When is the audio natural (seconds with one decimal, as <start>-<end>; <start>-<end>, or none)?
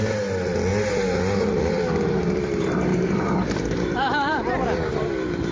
0.0-2.9; 4.5-5.5